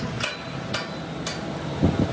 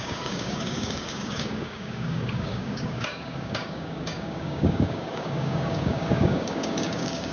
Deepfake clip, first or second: second